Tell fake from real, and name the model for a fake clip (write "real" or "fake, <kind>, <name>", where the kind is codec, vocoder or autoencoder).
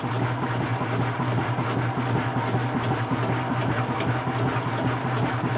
real